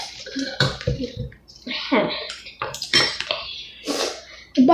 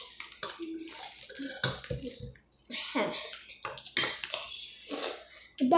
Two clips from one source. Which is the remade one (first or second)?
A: first